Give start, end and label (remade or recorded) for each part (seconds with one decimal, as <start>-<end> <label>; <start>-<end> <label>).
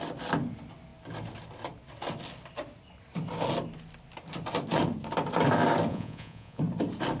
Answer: 0.0-5.9 recorded; 5.9-6.6 remade; 6.6-7.2 recorded